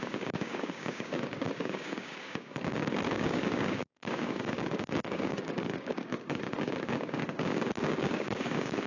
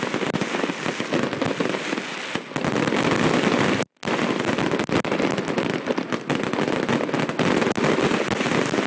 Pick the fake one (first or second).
first